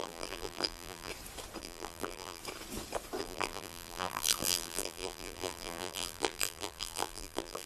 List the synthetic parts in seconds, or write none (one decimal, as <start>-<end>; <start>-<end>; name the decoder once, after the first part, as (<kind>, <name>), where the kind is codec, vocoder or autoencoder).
0.0-1.1 (vocoder, BigVGAN v2); 1.6-2.4; 3.2-7.7